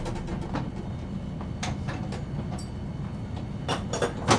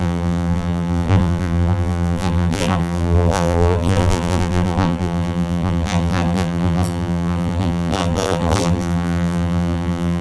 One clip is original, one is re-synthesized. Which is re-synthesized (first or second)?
second